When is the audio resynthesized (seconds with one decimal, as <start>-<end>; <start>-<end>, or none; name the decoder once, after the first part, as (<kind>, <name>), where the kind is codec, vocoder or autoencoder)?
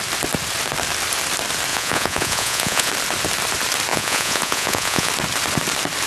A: 1.7-2.9 (vocoder, Vocos); 3.9-5.1